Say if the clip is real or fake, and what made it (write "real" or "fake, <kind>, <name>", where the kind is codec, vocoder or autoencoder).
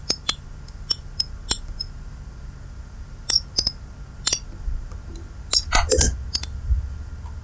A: real